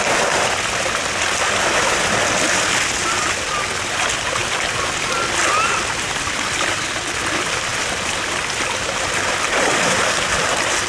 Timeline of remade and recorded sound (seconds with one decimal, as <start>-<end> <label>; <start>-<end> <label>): 0.0-10.9 recorded